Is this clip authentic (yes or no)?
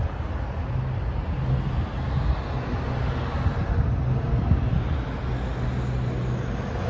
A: yes